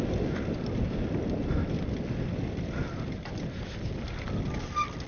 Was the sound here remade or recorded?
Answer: recorded